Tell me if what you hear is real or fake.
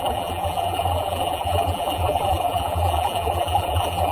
fake